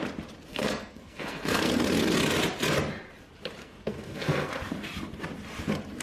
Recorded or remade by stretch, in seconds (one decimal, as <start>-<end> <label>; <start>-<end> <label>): 0.0-0.5 recorded; 0.5-1.7 remade; 1.7-3.6 recorded; 3.6-4.5 remade; 4.5-6.0 recorded

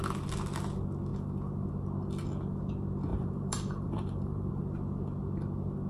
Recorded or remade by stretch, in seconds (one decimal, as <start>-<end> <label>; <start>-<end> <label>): 0.0-3.1 recorded; 3.1-4.5 remade; 4.5-5.9 recorded

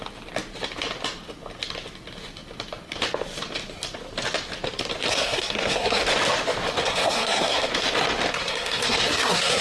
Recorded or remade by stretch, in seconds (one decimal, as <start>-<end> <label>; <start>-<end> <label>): 0.0-5.1 recorded; 5.1-6.0 remade; 6.0-6.8 recorded; 6.8-7.7 remade; 7.7-8.3 recorded; 8.3-9.6 remade

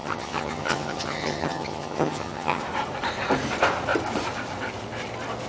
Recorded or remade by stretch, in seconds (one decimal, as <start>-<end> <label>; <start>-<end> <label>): 0.0-2.6 remade; 2.6-5.5 recorded